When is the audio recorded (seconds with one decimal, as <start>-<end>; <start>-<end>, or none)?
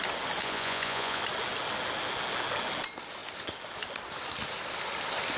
0.0-0.4; 1.2-5.4